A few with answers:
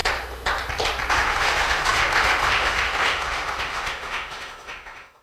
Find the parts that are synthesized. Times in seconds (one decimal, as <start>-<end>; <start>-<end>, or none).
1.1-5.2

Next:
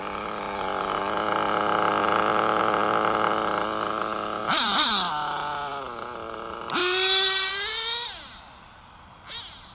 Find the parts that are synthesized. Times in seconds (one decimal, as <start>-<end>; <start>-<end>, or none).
2.0-2.6; 4.4-5.1

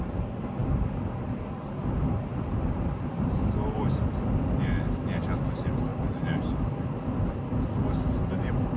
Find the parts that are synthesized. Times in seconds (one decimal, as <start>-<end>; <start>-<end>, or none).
0.6-1.4; 2.3-4.8; 5.9-7.6

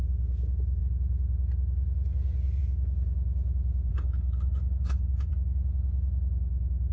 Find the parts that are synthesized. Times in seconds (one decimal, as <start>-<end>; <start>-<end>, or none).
3.9-5.3

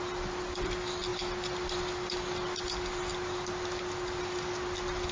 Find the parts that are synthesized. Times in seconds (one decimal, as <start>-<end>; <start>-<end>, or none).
none

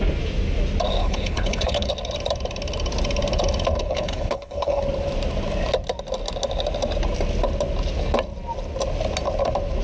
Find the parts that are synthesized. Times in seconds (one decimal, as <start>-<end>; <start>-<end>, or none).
1.0-1.9; 3.8-4.8

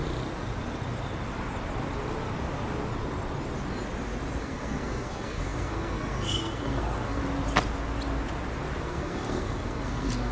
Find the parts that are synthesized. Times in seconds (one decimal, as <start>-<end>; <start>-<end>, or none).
4.4-7.2; 8.8-10.3